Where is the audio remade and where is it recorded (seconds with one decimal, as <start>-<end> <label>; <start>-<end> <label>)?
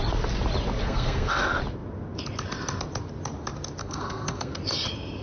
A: 0.0-0.8 recorded; 0.8-1.3 remade; 1.3-3.8 recorded; 3.8-4.6 remade; 4.6-5.2 recorded